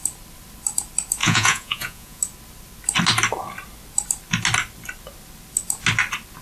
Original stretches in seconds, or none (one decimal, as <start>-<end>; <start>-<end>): 0.0-1.2; 2.2-6.4